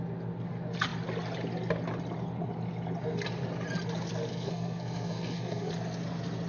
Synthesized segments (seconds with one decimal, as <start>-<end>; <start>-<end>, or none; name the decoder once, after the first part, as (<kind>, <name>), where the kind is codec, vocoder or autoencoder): 4.3-5.7 (codec, SNAC)